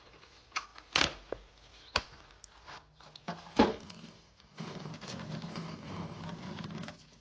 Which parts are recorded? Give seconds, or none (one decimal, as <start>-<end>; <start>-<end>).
0.0-3.7; 4.9-5.5; 6.2-7.2